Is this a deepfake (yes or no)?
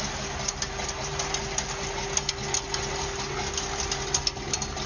no